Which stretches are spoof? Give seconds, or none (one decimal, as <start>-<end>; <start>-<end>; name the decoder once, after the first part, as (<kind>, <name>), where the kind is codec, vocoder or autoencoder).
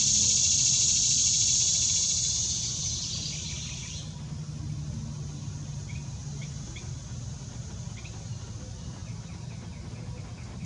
1.2-4.6 (vocoder, BigVGAN v2); 6.2-6.9